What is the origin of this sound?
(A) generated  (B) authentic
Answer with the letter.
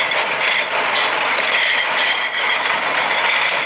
B